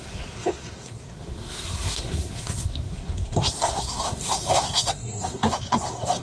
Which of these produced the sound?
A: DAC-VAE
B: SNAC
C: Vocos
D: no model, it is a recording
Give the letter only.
B